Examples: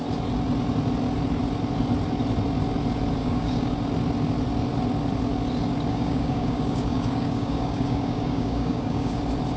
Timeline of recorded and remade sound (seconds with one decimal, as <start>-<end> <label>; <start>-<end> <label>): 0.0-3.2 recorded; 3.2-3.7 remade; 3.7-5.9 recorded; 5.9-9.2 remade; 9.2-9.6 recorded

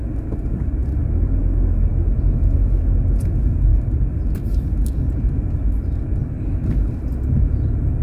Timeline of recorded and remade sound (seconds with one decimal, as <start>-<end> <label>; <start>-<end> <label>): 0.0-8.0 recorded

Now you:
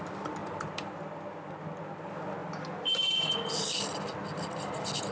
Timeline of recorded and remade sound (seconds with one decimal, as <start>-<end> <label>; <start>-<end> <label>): 0.0-5.1 recorded